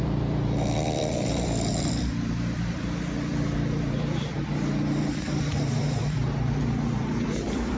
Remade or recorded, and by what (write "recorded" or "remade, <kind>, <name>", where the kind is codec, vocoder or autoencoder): remade, vocoder, BigVGAN v2